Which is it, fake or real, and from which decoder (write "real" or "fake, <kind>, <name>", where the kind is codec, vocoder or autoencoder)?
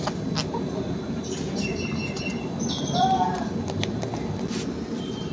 real